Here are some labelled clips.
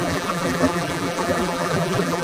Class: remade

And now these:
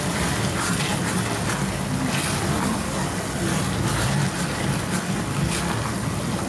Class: recorded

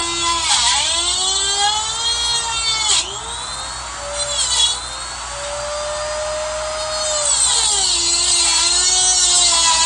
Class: recorded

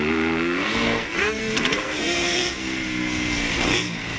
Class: remade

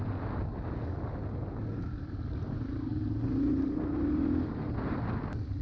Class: recorded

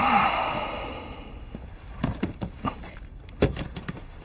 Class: recorded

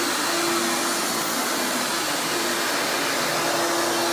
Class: recorded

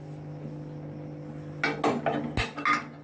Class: recorded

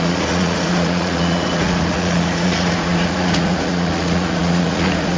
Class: remade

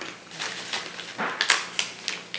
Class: recorded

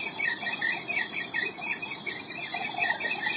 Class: recorded